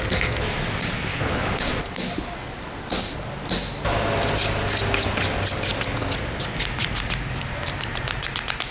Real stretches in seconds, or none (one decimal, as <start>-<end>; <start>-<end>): 0.0-1.1; 1.7-8.7